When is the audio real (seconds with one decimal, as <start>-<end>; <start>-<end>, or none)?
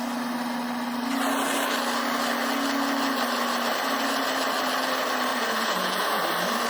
0.0-5.3; 6.2-6.7